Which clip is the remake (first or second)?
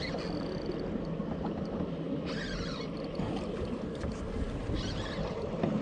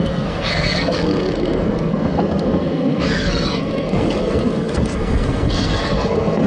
second